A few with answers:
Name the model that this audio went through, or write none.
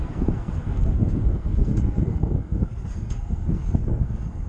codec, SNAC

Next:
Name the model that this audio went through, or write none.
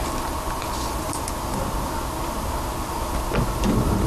none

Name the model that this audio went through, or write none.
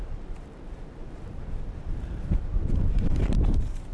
vocoder, BigVGAN v2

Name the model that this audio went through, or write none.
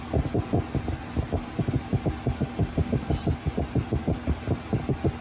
none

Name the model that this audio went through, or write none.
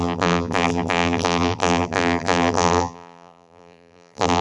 vocoder, BigVGAN v2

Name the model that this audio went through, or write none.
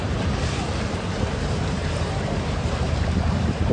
vocoder, BigVGAN v2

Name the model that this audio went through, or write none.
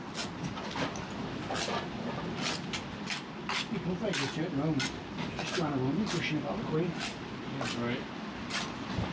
none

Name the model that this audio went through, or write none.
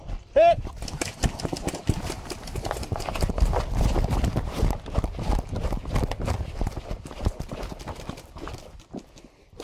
none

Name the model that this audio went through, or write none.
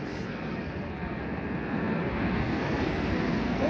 codec, SNAC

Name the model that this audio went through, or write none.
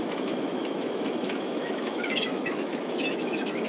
autoencoder, DAC-VAE